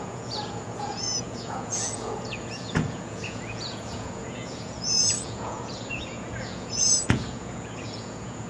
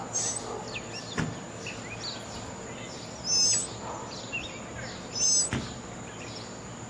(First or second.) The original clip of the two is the second